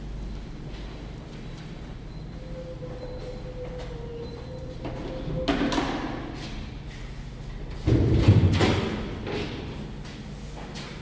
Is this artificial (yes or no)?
no